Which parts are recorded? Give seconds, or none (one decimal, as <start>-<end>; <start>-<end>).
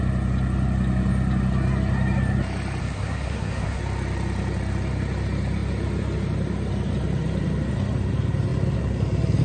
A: 0.0-2.8; 3.8-9.4